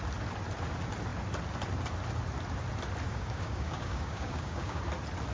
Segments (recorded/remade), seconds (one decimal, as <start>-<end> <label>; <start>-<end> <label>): 0.0-3.1 recorded; 3.1-4.8 remade; 4.8-5.3 recorded